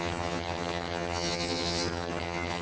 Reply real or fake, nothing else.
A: fake